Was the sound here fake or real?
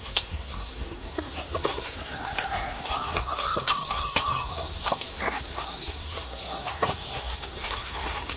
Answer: fake